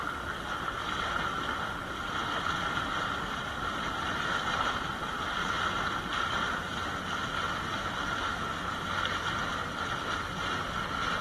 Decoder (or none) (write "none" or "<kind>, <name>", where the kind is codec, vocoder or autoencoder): none